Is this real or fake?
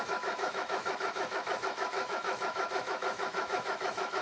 fake